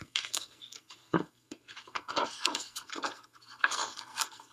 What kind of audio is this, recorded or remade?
remade